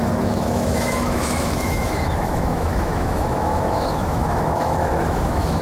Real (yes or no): no